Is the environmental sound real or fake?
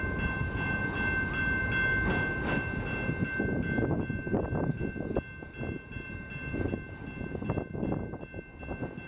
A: real